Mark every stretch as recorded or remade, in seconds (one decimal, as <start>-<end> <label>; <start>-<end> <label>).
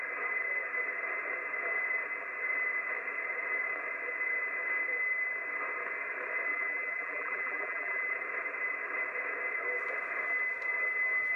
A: 0.0-6.5 recorded; 6.5-8.1 remade; 8.1-11.4 recorded